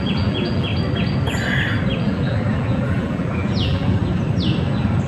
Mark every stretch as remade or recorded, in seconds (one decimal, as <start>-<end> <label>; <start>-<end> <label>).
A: 0.0-0.7 remade; 0.7-2.0 recorded; 2.0-4.0 remade; 4.0-5.1 recorded